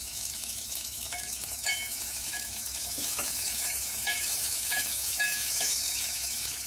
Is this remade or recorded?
remade